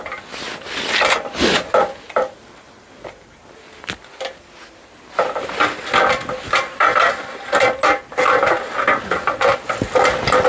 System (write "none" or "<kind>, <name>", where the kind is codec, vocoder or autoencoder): none